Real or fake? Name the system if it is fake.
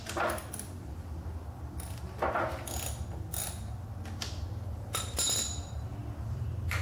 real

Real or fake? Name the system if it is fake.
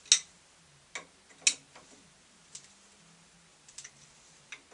real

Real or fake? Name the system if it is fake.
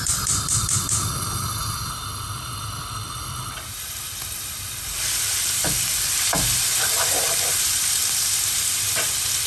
fake, vocoder, BigVGAN v2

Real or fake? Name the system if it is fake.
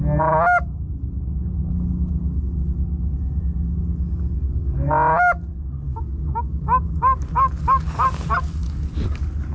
real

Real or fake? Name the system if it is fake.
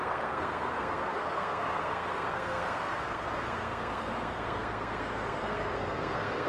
fake, codec, SNAC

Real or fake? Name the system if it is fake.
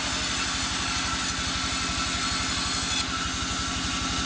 real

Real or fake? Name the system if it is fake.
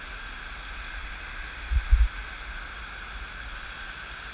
real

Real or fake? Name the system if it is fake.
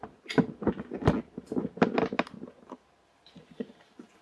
real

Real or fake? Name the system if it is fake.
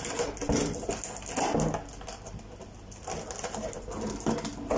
real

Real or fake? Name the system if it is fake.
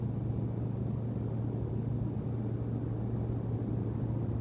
real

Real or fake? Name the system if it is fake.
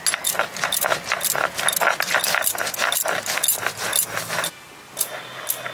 real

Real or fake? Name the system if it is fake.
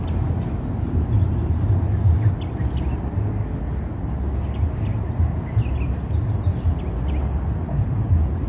real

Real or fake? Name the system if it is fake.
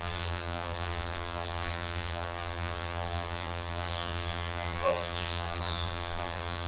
fake, vocoder, BigVGAN v2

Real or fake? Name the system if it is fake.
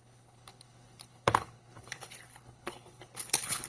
fake, codec, HILCodec